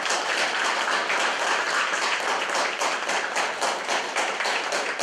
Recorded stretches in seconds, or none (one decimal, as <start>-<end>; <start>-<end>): 0.0-5.0